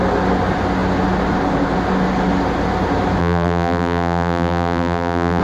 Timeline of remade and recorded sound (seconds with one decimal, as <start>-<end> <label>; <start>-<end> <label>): 0.0-3.2 recorded; 3.2-5.4 remade